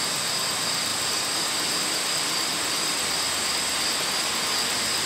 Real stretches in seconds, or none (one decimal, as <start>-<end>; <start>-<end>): 0.0-5.1